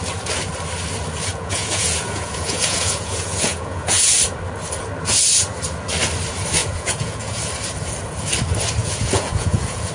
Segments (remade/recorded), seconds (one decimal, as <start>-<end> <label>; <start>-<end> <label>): 0.0-1.3 recorded; 1.3-4.1 remade; 4.1-6.6 recorded; 6.6-7.4 remade; 7.4-8.8 recorded; 8.8-9.9 remade